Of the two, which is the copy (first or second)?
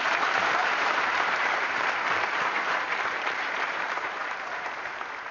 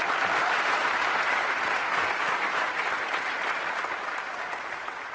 first